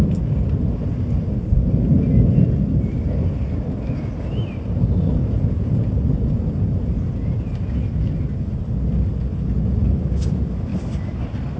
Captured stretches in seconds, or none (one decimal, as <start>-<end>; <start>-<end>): 0.0-5.2; 7.4-11.6